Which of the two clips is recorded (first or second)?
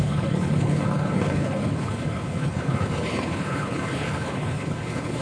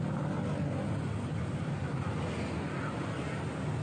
second